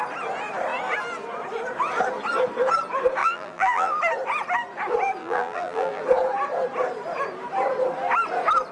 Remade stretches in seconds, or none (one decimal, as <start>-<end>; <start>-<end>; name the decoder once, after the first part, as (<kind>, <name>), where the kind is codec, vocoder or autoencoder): 3.2-4.0 (vocoder, BigVGAN v2); 5.2-6.0